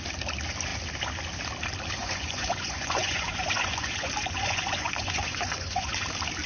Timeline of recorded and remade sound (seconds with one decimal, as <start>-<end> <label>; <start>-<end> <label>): 0.0-2.0 recorded; 2.0-5.9 remade; 5.9-6.5 recorded